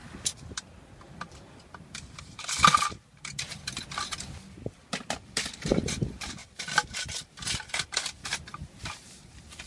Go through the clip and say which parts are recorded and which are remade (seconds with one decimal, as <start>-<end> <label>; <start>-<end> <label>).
0.0-6.4 remade; 6.4-7.7 recorded; 7.7-9.7 remade